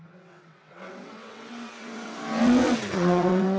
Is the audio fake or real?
fake